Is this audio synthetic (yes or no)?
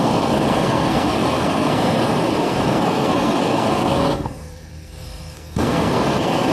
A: yes